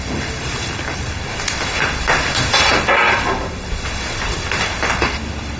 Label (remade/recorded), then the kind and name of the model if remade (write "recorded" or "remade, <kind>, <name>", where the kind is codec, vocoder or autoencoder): recorded